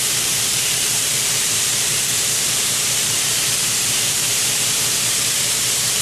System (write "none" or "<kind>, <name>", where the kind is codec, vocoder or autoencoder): vocoder, BigVGAN v2